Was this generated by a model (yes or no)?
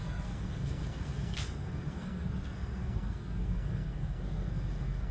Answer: yes